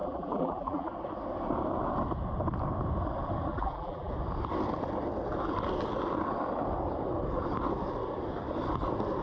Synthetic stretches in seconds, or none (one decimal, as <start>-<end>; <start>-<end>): 0.0-0.9; 3.5-4.1